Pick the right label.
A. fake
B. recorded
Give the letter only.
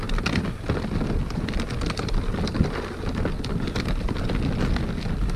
B